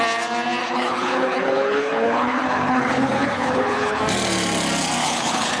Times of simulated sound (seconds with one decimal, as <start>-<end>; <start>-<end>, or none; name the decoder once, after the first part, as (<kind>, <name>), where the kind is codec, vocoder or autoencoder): 0.6-4.0 (codec, HILCodec); 5.0-5.6